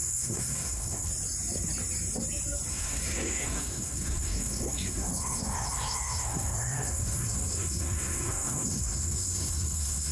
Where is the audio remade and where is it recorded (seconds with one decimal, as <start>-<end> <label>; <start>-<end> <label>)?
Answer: 0.0-1.1 remade; 1.1-2.7 recorded; 2.7-10.1 remade